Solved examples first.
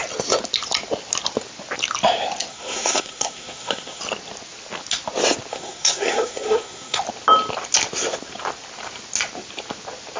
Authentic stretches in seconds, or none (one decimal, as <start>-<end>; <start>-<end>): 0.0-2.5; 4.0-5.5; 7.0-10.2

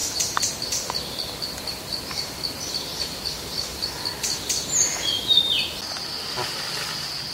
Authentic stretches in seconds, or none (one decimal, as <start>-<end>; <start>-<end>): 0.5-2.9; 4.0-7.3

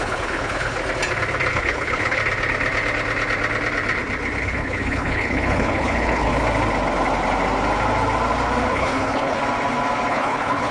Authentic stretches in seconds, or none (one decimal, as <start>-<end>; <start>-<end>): 0.8-1.5; 2.2-4.4; 6.3-8.7; 9.4-10.1

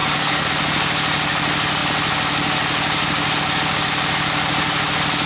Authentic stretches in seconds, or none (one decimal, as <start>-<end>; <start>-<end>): 0.5-5.3